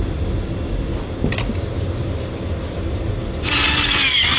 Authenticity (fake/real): real